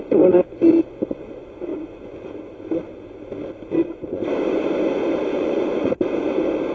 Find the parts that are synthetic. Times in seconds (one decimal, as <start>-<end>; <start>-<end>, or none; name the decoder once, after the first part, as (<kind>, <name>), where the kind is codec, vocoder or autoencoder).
1.7-2.3 (vocoder, Vocos); 3.8-4.3; 5.3-5.9

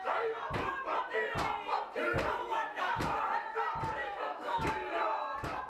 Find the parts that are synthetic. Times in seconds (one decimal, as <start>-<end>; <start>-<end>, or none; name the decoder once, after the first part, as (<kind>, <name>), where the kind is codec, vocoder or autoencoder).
2.4-3.2 (autoencoder, DAC-VAE); 4.0-4.7

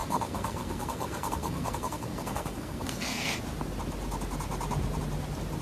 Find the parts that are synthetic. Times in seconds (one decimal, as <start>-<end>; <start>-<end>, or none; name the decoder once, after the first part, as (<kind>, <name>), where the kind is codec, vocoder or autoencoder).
0.0-3.4 (codec, SNAC)

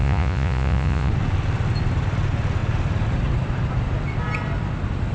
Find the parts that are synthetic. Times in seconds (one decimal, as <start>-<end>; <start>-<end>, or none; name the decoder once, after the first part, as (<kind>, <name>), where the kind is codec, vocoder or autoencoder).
0.0-1.1 (vocoder, Vocos)

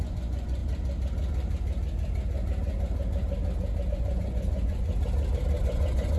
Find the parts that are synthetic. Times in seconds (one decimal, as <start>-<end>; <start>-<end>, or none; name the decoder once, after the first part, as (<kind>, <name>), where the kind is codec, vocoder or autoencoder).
0.0-0.6 (vocoder, Vocos); 3.9-4.9; 5.6-6.2

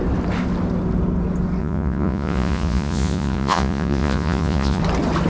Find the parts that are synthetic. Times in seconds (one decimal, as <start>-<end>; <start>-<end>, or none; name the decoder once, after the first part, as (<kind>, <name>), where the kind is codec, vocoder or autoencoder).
1.6-4.8 (vocoder, Vocos)